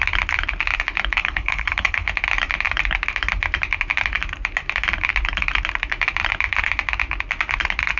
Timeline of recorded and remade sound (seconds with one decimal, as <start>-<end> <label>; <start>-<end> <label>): 0.0-1.2 recorded; 1.2-2.1 remade; 2.1-8.0 recorded